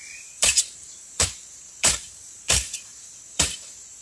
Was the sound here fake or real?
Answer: fake